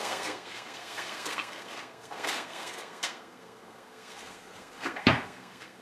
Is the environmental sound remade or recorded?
remade